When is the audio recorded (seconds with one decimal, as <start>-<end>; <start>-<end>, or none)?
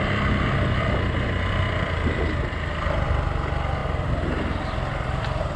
0.0-5.6